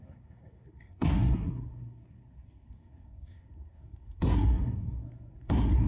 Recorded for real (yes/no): no